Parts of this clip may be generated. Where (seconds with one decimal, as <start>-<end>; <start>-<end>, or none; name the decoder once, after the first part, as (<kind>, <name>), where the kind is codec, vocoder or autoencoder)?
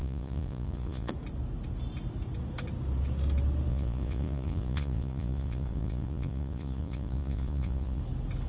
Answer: 0.0-1.1 (vocoder, Vocos); 3.7-8.0